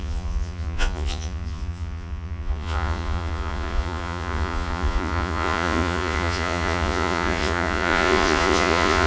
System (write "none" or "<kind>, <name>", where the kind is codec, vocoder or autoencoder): vocoder, Vocos